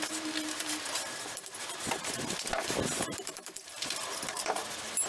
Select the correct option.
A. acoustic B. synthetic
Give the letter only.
B